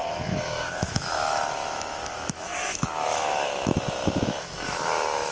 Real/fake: fake